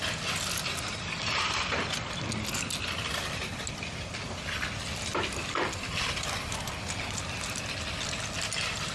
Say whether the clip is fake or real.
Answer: real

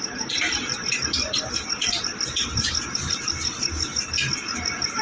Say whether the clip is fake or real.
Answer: fake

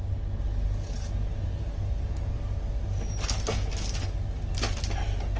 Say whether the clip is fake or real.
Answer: real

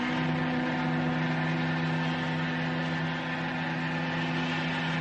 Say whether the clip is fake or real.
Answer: real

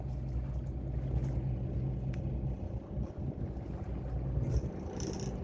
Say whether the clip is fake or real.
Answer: real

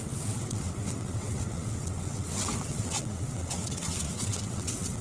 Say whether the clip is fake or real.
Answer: fake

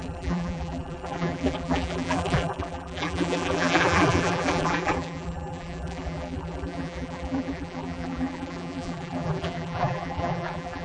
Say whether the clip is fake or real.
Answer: fake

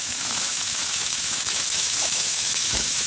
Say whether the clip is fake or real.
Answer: fake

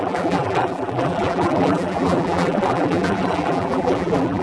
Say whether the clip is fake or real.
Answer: fake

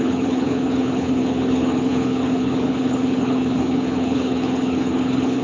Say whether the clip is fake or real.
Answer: fake